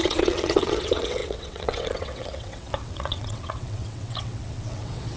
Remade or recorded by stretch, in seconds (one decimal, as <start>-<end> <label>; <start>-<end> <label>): 0.0-5.2 remade